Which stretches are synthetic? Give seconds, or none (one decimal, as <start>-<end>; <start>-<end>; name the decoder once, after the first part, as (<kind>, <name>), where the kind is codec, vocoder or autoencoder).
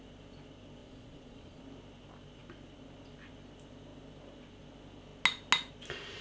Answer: 0.8-1.6 (vocoder, Vocos)